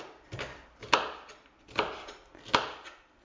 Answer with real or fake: real